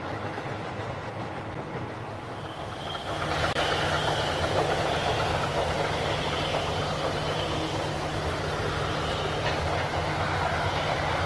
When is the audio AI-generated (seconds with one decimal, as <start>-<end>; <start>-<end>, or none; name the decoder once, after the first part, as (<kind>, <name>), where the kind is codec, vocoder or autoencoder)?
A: none